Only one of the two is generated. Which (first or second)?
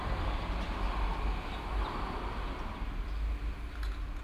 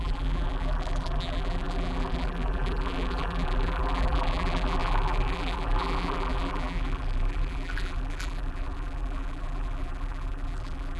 second